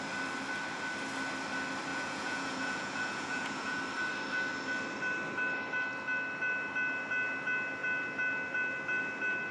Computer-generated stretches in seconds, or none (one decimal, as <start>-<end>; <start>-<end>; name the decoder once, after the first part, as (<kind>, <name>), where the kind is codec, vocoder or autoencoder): 1.9-3.8 (vocoder, Vocos)